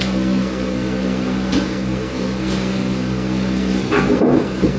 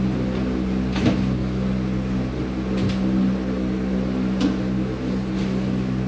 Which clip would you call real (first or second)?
second